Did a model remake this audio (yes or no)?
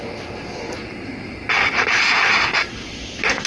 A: no